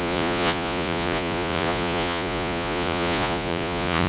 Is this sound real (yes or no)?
no